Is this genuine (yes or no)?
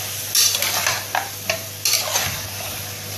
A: yes